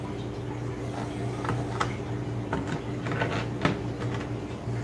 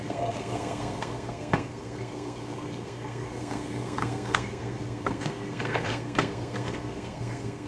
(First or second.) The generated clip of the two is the second